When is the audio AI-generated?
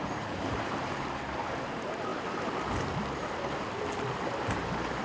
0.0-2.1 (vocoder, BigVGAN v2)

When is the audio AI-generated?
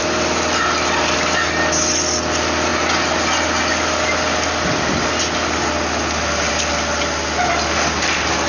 none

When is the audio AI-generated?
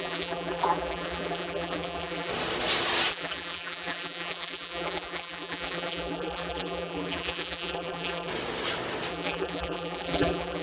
0.0-2.3 (vocoder, BigVGAN v2); 3.1-8.3; 9.1-10.6